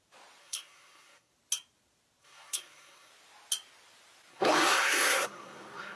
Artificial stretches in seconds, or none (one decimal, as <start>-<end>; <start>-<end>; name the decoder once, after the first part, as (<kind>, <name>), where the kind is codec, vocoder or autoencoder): 0.4-1.3 (codec, SNAC); 2.2-3.1; 4.3-6.0